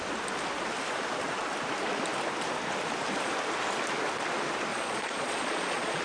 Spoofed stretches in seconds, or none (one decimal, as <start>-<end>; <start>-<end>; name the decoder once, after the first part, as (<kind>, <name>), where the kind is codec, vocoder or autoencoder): 4.7-6.0 (vocoder, Vocos)